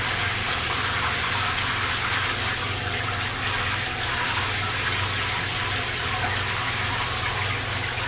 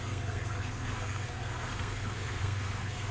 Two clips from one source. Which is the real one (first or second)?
first